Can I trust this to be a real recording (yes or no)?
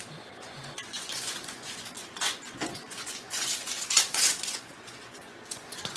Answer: no